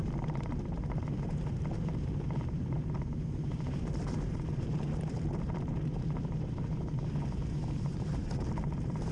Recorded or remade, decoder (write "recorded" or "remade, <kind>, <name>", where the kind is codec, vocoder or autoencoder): remade, vocoder, BigVGAN v2